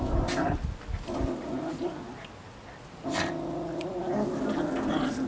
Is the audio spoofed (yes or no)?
no